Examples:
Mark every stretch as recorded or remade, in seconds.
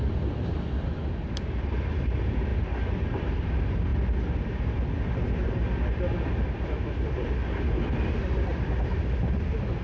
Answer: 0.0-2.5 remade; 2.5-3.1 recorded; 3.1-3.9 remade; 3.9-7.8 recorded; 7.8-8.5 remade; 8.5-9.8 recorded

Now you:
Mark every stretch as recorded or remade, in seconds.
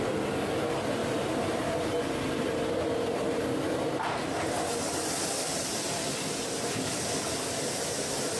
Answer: 0.0-1.0 recorded; 1.0-2.0 remade; 2.0-5.4 recorded; 5.4-6.1 remade; 6.1-8.4 recorded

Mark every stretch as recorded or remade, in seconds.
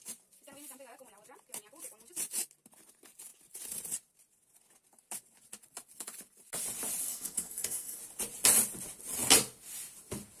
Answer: 0.0-7.0 recorded; 7.0-8.0 remade; 8.0-10.4 recorded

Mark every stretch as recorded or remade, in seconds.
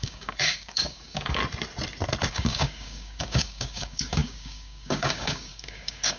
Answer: 0.0-1.4 remade; 1.4-2.3 recorded; 2.3-6.2 remade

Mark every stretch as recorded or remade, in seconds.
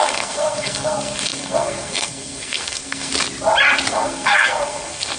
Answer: 0.0-3.1 remade; 3.1-3.9 recorded; 3.9-5.2 remade